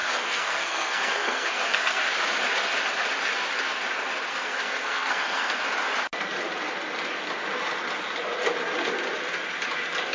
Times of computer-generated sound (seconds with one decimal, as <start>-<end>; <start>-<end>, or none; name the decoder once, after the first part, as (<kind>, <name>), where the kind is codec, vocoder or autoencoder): 0.0-2.0 (codec, SNAC); 4.3-5.6